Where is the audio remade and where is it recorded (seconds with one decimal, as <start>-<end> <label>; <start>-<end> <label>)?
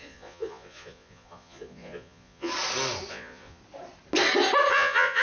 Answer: 0.0-2.5 remade; 2.5-3.1 recorded; 3.1-3.6 remade; 3.6-4.7 recorded; 4.7-5.2 remade